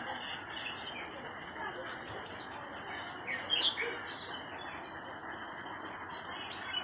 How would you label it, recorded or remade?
recorded